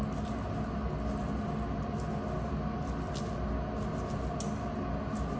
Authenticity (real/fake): real